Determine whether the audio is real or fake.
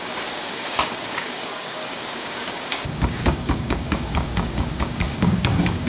fake